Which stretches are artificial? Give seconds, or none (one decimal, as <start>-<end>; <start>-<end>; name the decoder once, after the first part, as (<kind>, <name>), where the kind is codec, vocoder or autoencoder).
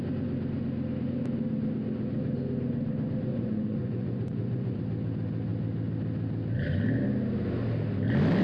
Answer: 3.3-4.8 (vocoder, Vocos)